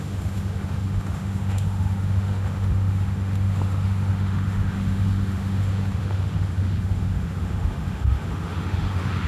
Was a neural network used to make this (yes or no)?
yes